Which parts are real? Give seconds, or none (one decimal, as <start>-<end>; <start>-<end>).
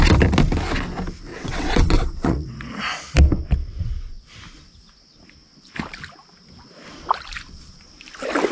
0.0-1.3; 2.7-3.7; 4.3-8.5